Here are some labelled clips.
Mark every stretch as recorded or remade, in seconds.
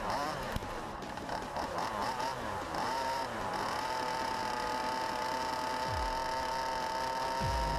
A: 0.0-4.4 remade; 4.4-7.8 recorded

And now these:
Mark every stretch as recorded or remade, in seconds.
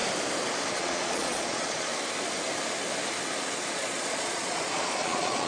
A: 0.0-0.7 recorded; 0.7-1.9 remade; 1.9-3.7 recorded; 3.7-5.5 remade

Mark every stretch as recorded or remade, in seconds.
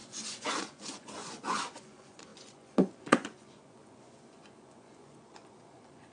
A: 0.0-6.1 remade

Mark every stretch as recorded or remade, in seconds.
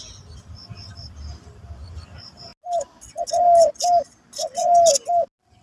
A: 0.0-5.6 recorded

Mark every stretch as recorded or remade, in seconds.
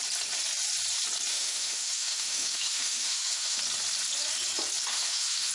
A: 0.0-1.3 recorded; 1.3-3.6 remade; 3.6-4.9 recorded; 4.9-5.5 remade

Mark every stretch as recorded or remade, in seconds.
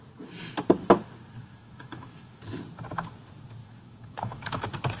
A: 0.0-1.4 recorded; 1.4-2.4 remade; 2.4-3.6 recorded; 3.6-4.6 remade; 4.6-5.0 recorded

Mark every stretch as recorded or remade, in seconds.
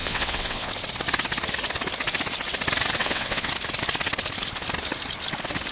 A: 0.0-0.7 remade; 0.7-3.0 recorded; 3.0-3.5 remade; 3.5-5.7 recorded